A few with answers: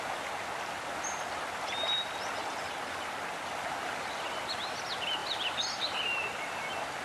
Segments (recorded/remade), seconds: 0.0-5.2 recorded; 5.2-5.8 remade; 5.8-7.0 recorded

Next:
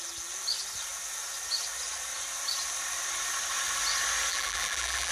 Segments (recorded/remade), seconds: 0.0-4.3 recorded; 4.3-5.1 remade

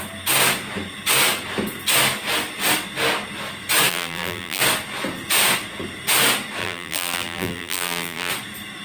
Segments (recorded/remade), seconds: 0.0-3.9 recorded; 3.9-4.6 remade; 4.6-6.6 recorded; 6.6-8.3 remade; 8.3-8.8 recorded

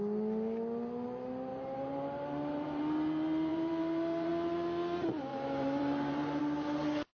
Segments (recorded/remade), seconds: 0.0-1.5 recorded; 1.5-2.8 remade; 2.8-3.5 recorded; 3.5-4.3 remade; 4.3-5.3 recorded; 5.3-6.4 remade; 6.4-7.2 recorded

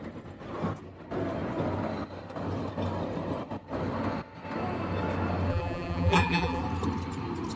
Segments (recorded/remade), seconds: 0.0-5.5 recorded; 5.5-6.6 remade; 6.6-7.6 recorded